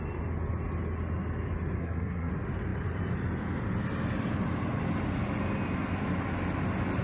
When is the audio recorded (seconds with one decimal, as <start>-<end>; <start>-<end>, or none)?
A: 0.0-1.8; 2.3-7.0